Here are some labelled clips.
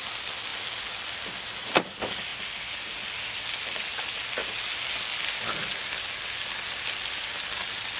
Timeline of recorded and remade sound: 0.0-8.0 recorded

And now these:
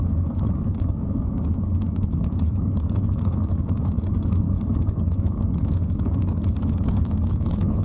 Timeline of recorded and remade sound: 0.0-7.8 remade